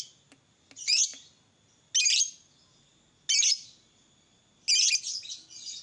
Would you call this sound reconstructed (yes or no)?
no